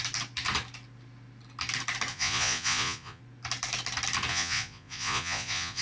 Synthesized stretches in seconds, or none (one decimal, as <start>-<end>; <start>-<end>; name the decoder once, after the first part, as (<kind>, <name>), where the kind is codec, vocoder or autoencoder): 2.1-3.2 (vocoder, Vocos); 4.3-5.8